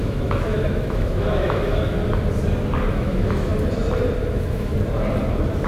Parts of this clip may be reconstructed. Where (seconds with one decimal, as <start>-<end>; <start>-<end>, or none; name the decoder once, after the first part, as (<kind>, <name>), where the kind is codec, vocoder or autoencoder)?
0.0-2.0 (autoencoder, DAC-VAE); 2.9-3.5; 4.3-4.7